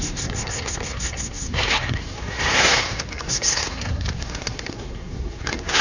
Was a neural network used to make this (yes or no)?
yes